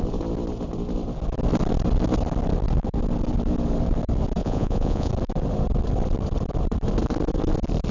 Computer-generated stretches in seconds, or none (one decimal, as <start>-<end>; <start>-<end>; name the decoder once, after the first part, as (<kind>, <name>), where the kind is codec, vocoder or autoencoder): 4.4-5.1 (vocoder, Vocos)